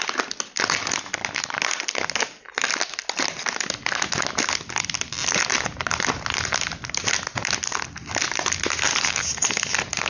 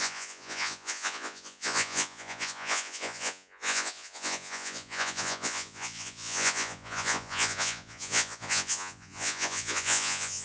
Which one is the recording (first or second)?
first